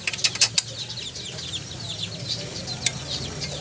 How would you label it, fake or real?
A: real